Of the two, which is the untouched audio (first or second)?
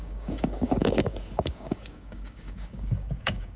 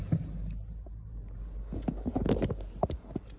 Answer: second